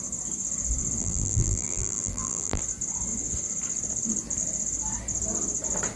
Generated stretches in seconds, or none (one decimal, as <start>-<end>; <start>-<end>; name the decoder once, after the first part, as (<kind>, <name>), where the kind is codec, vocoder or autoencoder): 1.0-2.6 (vocoder, BigVGAN v2)